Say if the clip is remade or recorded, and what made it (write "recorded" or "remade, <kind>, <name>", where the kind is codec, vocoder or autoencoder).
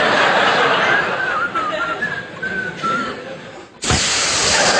remade, vocoder, BigVGAN v2